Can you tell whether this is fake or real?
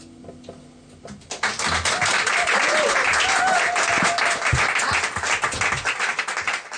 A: real